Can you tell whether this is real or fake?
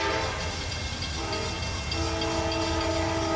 real